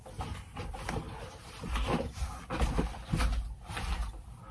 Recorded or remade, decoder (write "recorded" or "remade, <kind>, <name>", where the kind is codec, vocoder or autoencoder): recorded